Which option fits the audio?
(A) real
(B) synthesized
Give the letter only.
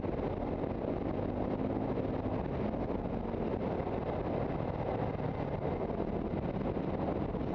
A